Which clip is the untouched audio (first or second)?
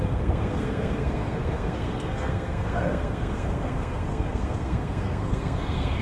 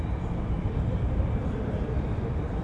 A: second